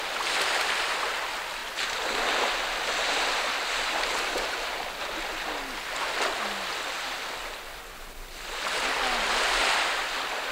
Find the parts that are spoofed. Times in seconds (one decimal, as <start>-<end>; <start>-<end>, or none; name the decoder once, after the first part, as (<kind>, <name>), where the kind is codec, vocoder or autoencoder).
none